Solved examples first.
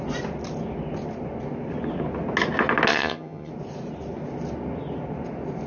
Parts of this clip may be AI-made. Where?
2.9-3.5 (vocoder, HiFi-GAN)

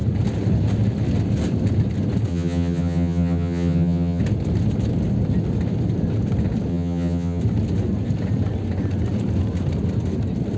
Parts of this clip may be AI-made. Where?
2.3-4.2 (vocoder, HiFi-GAN); 6.7-7.4

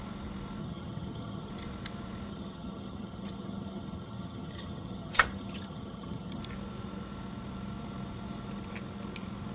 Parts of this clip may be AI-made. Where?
0.6-1.5 (vocoder, HiFi-GAN); 2.3-6.4

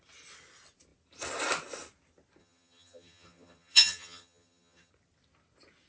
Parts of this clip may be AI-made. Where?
2.4-4.9 (vocoder, HiFi-GAN)

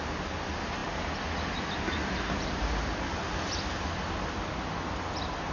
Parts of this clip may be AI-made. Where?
none

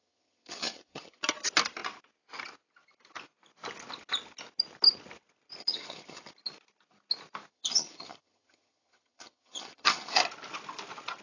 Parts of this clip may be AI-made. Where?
0.0-1.2 (vocoder, HiFi-GAN); 5.6-6.3; 7.5-10.2